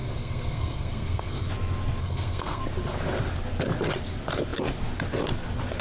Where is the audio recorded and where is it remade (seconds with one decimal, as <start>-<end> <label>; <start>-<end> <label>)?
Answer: 0.0-1.5 remade; 1.5-2.0 recorded; 2.0-2.6 remade; 2.6-5.8 recorded